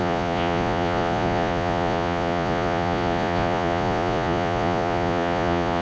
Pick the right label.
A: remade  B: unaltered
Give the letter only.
A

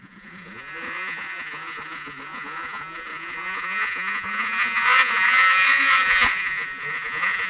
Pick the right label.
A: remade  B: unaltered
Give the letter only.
A